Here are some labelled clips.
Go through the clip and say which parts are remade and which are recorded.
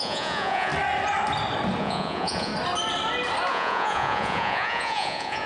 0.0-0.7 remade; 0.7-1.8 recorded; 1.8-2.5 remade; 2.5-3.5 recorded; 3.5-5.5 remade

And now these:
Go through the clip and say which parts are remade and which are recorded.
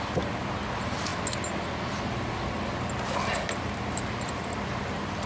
0.0-5.3 recorded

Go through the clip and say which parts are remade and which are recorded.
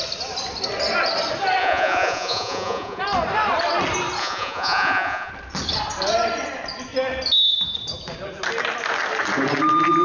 0.0-1.6 recorded; 1.6-3.0 remade; 3.0-4.2 recorded; 4.2-5.3 remade; 5.3-10.0 recorded